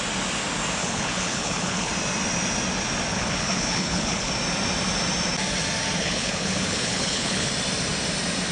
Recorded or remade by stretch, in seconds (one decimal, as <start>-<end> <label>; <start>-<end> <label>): 0.0-0.8 recorded; 0.8-1.9 remade; 1.9-3.1 recorded; 3.1-4.3 remade; 4.3-6.0 recorded; 6.0-7.5 remade; 7.5-8.5 recorded